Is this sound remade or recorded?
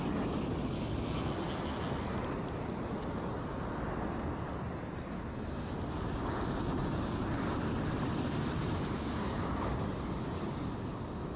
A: recorded